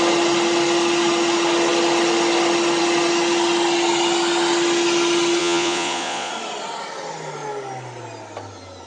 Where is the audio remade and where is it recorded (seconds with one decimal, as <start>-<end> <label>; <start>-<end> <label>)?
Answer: 0.0-5.4 recorded; 5.4-6.3 remade; 6.3-8.9 recorded